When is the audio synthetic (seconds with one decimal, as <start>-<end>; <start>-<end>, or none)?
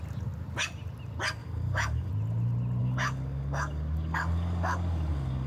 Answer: 1.4-2.1; 2.8-5.5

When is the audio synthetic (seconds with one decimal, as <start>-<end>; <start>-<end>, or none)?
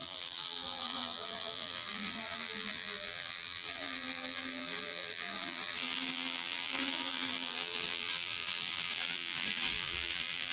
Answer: 0.0-10.5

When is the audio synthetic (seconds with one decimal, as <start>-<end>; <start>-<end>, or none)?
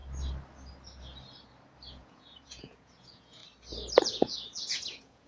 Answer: 1.9-3.4; 4.0-5.3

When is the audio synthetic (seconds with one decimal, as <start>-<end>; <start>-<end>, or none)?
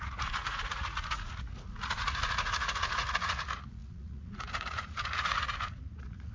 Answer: 0.0-6.3